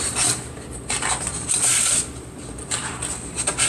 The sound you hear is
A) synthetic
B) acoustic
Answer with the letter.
A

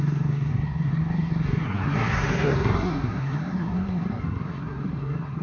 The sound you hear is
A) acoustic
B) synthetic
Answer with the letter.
B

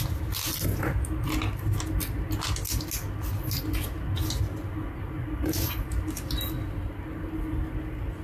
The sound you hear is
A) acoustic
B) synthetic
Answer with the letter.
A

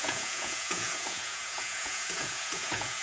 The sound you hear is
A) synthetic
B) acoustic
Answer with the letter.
A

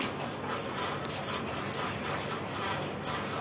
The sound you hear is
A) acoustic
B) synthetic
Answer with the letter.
A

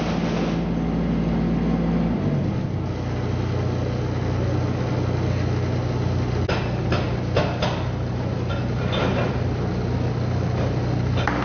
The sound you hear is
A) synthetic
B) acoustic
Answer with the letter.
B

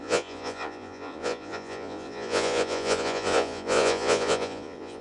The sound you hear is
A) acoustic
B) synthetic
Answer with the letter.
B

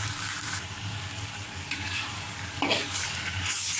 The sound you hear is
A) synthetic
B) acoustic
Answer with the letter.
A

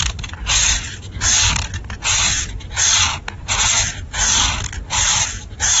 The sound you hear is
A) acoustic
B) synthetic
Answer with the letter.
A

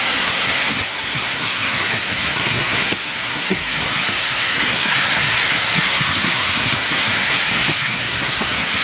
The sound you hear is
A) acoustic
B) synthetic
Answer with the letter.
B